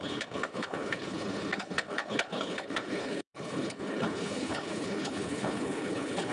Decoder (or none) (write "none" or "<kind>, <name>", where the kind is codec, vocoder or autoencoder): codec, HILCodec